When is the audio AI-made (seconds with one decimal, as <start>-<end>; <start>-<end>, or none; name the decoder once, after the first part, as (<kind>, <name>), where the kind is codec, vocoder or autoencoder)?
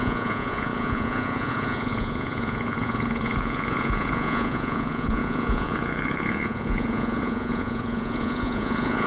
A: 0.0-9.1 (vocoder, Vocos)